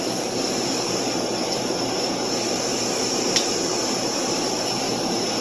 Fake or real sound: fake